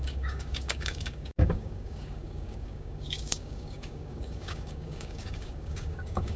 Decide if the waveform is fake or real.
fake